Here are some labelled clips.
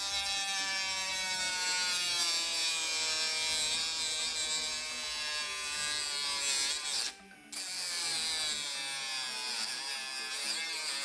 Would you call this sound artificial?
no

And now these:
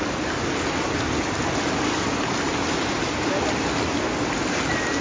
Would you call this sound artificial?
no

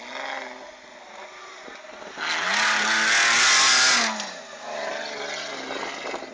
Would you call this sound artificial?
no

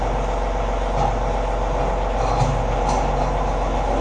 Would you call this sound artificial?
no